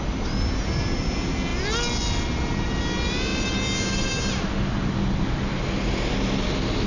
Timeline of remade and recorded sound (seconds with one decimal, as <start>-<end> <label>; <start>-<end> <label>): 0.0-6.9 recorded